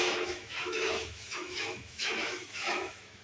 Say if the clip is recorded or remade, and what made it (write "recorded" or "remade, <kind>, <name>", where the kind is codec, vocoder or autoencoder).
remade, autoencoder, DAC-VAE